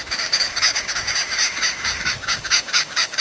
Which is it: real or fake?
fake